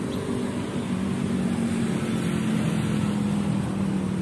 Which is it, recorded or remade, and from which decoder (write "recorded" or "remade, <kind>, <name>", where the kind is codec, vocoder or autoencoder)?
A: recorded